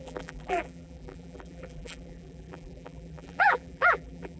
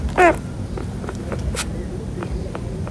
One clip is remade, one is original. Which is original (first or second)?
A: second